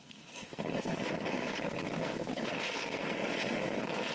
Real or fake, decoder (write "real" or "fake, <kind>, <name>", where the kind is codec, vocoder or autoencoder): fake, codec, SNAC